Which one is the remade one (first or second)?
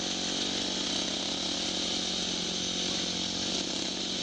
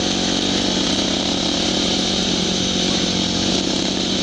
second